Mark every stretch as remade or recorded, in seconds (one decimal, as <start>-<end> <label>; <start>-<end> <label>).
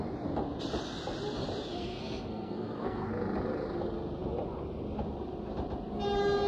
0.0-1.7 recorded; 1.7-3.1 remade; 3.1-6.5 recorded